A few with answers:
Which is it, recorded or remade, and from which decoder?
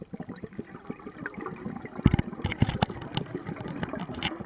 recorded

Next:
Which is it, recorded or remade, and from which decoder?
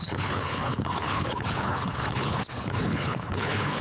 remade, codec, HILCodec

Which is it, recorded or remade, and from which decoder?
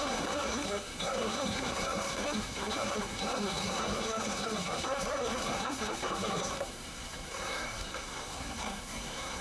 remade, codec, SNAC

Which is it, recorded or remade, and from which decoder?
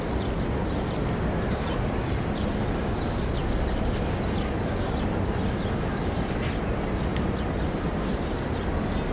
recorded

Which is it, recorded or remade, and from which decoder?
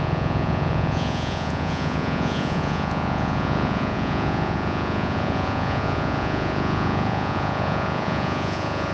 remade, vocoder, Vocos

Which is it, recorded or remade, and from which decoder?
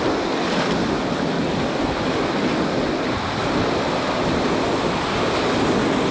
recorded